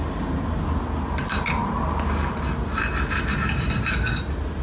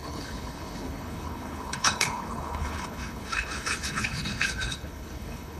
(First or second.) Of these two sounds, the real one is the first